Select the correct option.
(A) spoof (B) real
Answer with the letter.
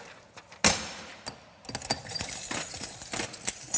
B